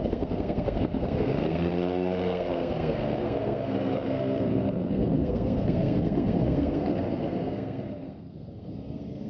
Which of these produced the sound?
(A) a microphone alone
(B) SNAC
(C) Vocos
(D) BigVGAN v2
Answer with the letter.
B